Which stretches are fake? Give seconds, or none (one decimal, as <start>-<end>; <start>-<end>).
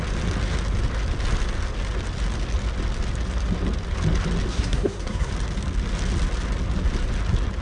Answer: 4.5-5.3